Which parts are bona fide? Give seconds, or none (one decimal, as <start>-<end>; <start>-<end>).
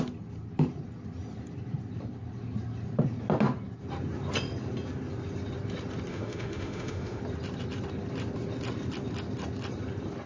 0.0-6.1; 7.2-10.3